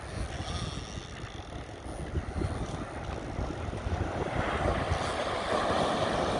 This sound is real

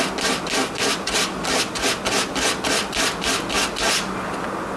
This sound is real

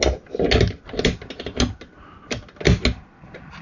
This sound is real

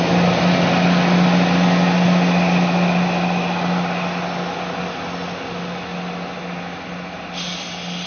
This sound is real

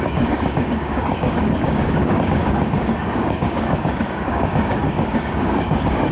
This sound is fake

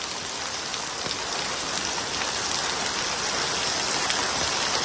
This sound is real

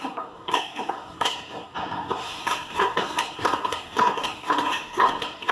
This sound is fake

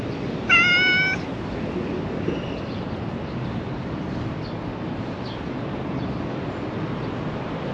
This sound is real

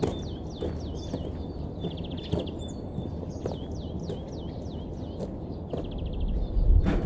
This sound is real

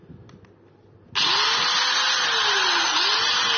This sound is real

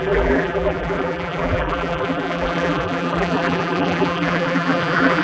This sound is fake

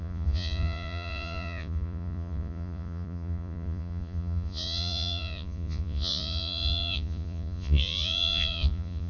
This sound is fake